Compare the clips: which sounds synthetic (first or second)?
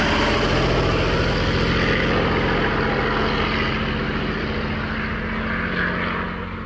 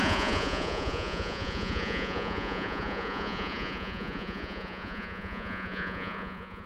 second